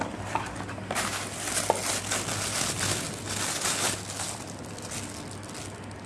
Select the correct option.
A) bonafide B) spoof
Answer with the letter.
A